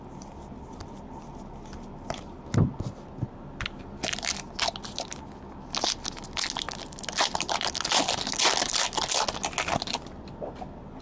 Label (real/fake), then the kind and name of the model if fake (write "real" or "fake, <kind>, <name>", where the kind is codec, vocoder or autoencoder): real